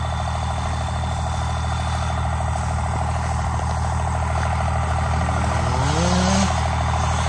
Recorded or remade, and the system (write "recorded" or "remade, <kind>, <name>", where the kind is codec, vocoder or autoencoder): recorded